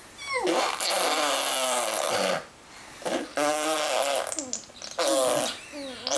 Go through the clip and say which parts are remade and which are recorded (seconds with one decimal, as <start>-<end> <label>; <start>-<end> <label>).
0.0-6.2 recorded

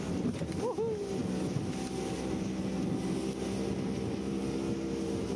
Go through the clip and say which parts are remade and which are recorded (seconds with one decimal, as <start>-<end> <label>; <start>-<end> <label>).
0.0-5.4 recorded

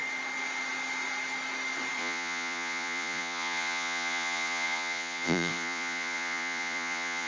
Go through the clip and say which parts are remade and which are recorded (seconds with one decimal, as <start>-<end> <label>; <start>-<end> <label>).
0.0-2.0 recorded; 2.0-7.3 remade

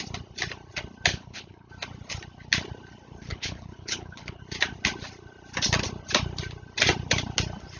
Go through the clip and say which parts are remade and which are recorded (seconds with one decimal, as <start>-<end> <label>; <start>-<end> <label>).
0.0-1.1 recorded; 1.1-1.7 remade; 1.7-3.2 recorded; 3.2-4.4 remade; 4.4-7.8 recorded

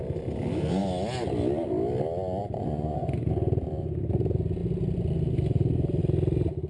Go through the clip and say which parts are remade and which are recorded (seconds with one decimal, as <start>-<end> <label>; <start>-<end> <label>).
0.0-2.4 recorded; 2.4-3.3 remade; 3.3-6.7 recorded

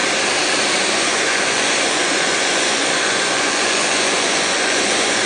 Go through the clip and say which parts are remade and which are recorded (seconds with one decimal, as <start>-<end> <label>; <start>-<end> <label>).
0.0-0.8 recorded; 0.8-5.3 remade

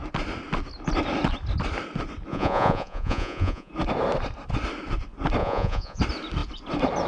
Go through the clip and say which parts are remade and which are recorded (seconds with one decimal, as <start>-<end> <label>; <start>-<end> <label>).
0.0-2.3 recorded; 2.3-3.7 remade; 3.7-5.4 recorded; 5.4-6.0 remade; 6.0-7.1 recorded

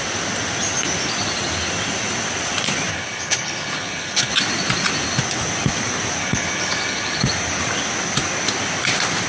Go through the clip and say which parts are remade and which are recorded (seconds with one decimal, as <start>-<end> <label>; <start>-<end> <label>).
0.0-2.9 recorded; 2.9-4.3 remade; 4.3-6.2 recorded; 6.2-7.2 remade; 7.2-9.3 recorded